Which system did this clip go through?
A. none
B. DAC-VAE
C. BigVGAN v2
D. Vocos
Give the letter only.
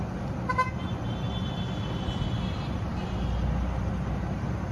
A